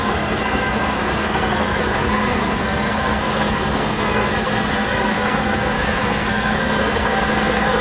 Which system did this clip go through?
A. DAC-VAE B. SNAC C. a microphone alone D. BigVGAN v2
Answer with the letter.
B